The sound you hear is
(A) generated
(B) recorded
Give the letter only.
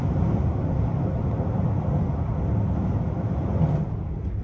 B